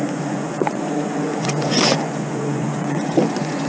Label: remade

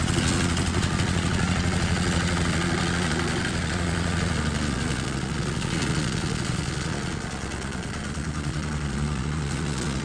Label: remade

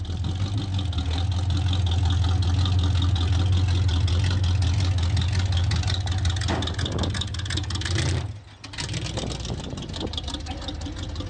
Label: recorded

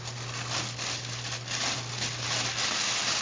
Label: recorded